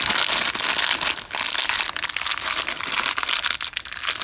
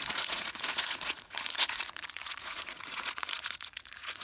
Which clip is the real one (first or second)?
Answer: first